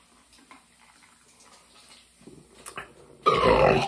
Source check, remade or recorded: recorded